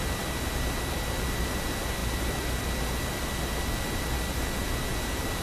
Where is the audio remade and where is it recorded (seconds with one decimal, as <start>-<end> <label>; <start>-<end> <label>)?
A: 0.0-5.4 recorded